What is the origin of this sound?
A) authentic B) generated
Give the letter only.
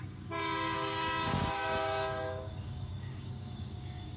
B